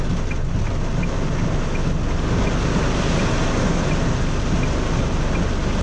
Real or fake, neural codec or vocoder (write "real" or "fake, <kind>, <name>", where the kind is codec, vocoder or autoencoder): real